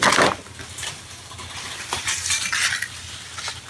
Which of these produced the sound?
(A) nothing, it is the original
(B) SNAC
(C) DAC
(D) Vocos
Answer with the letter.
A